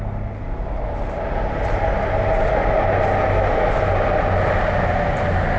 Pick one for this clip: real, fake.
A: real